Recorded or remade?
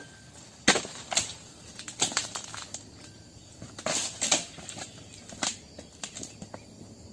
recorded